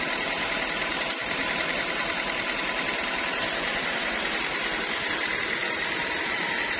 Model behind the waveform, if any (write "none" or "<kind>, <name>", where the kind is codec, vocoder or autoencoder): vocoder, BigVGAN v2